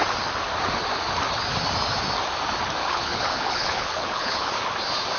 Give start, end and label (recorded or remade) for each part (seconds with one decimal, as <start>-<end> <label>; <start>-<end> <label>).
0.0-2.8 recorded; 2.8-4.5 remade; 4.5-5.2 recorded